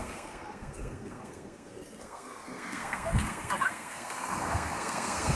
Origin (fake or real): fake